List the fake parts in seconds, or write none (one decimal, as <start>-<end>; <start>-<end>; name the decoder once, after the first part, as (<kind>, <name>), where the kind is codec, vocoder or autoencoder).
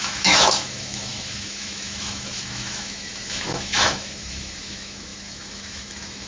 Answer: 0.0-6.3 (autoencoder, DAC-VAE)